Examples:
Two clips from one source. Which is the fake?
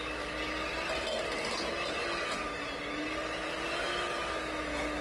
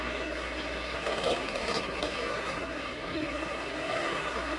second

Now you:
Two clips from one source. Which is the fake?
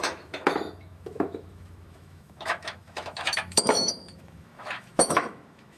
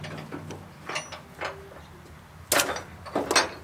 first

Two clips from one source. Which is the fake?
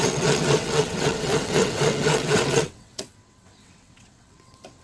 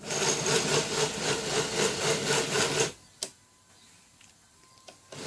first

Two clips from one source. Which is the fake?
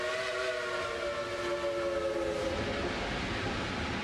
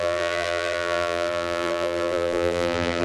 second